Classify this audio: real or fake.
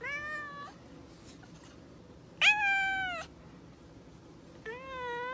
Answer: real